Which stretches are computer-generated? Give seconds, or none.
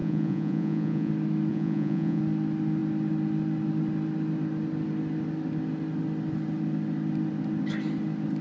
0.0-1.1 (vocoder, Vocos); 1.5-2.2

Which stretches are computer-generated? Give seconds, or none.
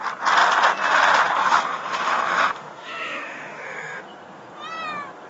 1.4-4.0 (autoencoder, DAC-VAE)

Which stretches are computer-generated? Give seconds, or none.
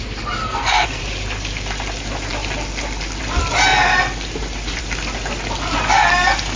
0.4-1.0 (codec, SNAC)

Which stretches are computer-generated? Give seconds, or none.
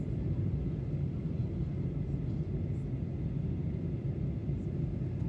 1.4-2.6 (vocoder, BigVGAN v2)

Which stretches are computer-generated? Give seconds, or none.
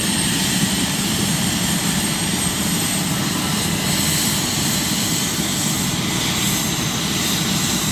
0.0-2.6 (vocoder, BigVGAN v2)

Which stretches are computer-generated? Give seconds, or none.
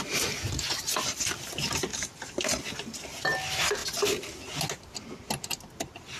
1.9-2.6 (vocoder, BigVGAN v2)